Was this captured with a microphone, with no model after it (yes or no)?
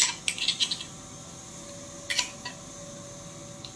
yes